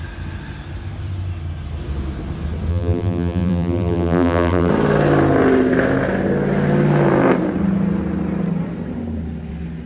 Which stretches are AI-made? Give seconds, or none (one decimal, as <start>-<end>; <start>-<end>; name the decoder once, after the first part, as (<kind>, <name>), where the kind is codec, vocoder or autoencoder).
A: 2.7-4.7 (vocoder, BigVGAN v2)